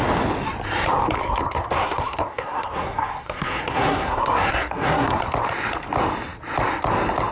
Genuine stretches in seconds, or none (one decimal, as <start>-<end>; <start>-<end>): 0.0-1.2; 5.2-7.3